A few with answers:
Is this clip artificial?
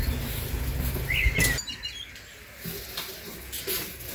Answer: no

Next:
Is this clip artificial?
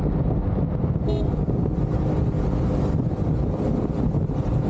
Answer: no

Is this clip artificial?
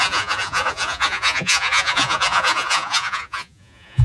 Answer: yes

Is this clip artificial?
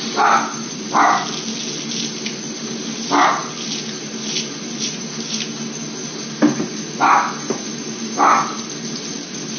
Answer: no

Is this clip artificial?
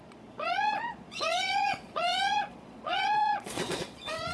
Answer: yes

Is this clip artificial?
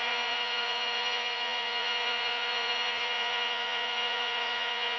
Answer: yes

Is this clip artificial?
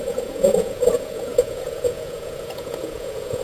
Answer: yes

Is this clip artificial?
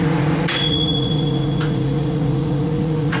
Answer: yes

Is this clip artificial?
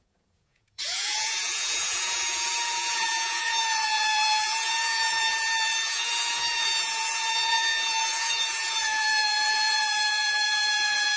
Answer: yes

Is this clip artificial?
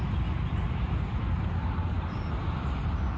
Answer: no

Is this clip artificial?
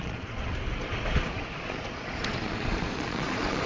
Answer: yes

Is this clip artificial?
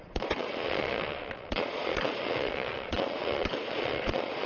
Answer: yes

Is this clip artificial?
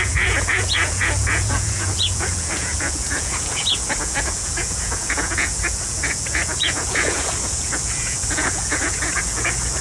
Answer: yes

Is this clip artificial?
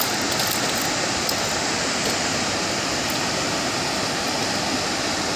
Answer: no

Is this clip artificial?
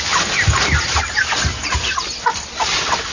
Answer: no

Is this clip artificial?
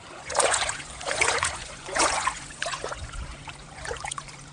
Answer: yes